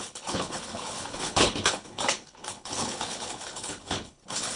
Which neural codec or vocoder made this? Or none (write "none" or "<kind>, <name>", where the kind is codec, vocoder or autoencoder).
codec, HILCodec